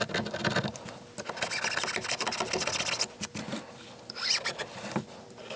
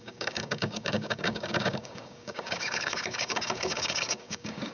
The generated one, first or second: second